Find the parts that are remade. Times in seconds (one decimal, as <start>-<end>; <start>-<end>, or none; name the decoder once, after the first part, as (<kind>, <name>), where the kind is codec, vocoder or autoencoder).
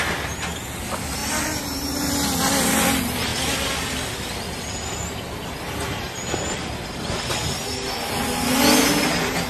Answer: none